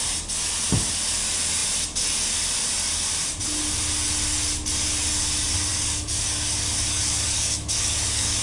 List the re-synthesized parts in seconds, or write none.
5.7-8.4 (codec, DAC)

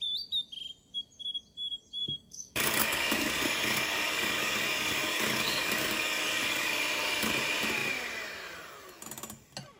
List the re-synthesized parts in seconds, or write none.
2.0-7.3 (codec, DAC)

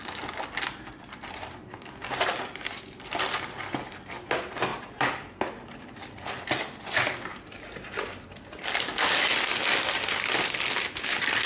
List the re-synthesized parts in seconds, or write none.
none

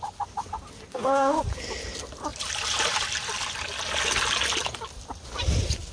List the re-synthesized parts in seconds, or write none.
0.9-1.4 (codec, DAC)

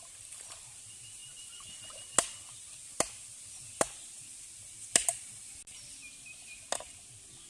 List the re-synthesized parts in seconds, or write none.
none

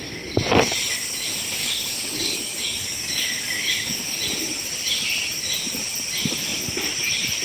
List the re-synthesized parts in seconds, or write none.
1.6-4.2 (codec, DAC)

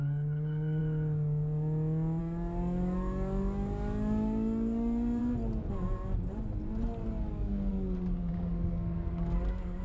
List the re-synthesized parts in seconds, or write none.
0.0-0.8 (codec, DAC); 2.2-5.2; 7.3-9.8

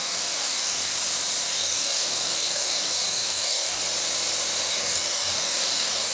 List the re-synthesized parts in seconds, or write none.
0.0-0.9 (codec, DAC); 1.4-3.8; 4.7-6.1